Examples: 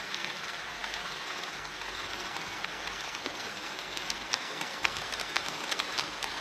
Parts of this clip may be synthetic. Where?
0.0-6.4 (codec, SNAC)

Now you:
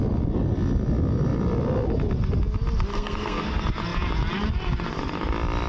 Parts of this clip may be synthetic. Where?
2.9-3.5 (codec, SNAC)

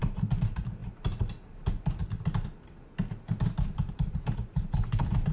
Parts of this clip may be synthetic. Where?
none

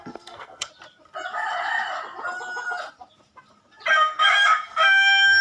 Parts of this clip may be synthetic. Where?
0.0-0.7 (codec, SNAC); 3.9-5.4